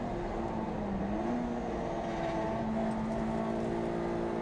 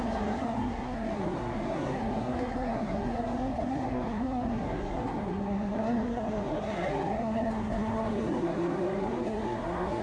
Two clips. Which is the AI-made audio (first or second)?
second